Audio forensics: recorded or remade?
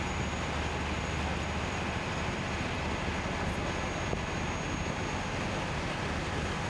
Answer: recorded